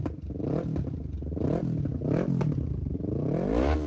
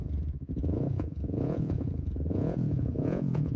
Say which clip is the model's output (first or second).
second